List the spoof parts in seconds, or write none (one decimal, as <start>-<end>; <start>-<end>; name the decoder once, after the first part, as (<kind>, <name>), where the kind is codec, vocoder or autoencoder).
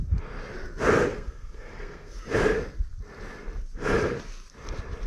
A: 1.1-2.2 (codec, SNAC)